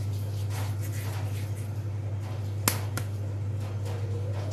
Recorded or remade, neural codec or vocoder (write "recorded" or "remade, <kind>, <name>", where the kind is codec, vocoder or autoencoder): recorded